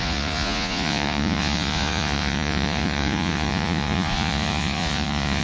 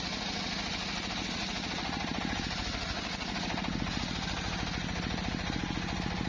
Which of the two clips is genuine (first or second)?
second